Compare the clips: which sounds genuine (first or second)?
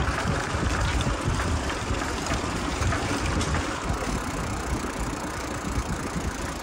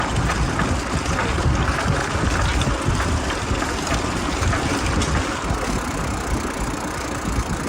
second